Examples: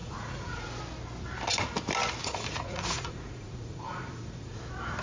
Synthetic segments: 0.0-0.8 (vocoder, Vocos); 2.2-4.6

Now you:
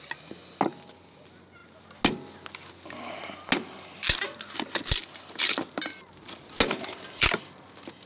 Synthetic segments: none

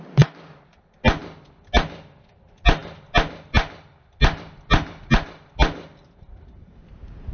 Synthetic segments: none

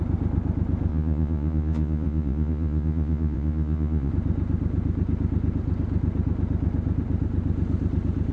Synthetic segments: 0.9-4.1 (vocoder, Vocos)

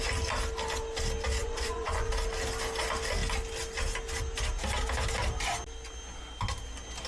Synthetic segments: 1.4-2.1 (vocoder, Vocos)

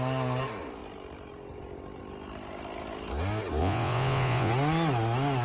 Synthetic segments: 3.6-4.5 (vocoder, Vocos)

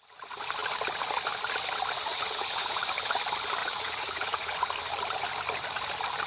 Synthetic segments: 2.1-2.8 (vocoder, Vocos); 3.6-4.6